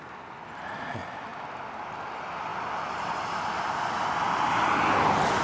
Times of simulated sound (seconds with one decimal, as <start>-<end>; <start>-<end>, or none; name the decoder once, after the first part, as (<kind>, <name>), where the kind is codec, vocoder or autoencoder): none